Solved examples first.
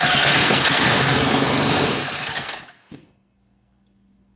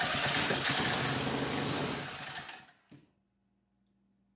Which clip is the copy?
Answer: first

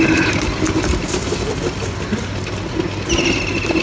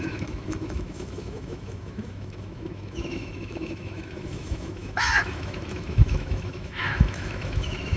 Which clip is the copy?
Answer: second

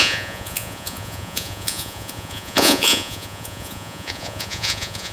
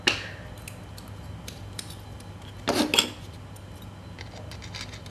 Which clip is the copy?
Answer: first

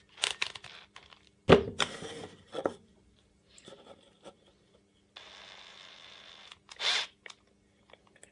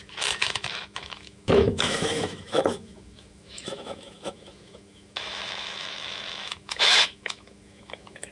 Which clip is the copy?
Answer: second